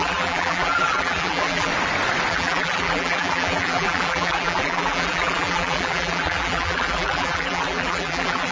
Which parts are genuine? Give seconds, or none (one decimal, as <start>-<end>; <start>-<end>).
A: 1.7-2.3